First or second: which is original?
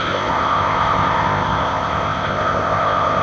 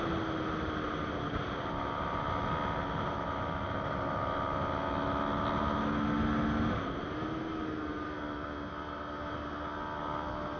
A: second